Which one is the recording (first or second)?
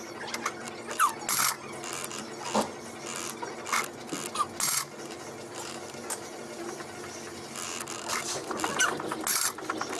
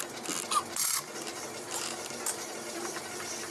first